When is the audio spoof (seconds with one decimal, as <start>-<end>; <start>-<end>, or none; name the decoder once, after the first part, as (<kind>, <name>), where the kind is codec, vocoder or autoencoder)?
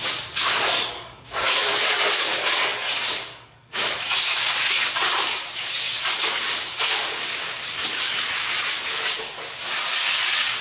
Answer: 0.0-10.6 (codec, DAC)